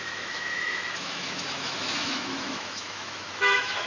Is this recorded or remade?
remade